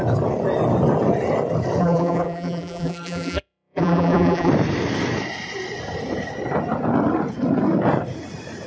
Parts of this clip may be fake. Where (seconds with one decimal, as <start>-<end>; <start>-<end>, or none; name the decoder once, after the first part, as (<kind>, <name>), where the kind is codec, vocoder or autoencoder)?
1.8-4.5 (vocoder, BigVGAN v2)